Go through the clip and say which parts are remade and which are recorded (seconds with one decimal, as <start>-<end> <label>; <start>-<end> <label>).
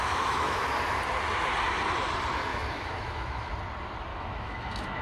0.0-0.7 remade; 0.7-2.5 recorded; 2.5-3.5 remade; 3.5-4.1 recorded; 4.1-5.0 remade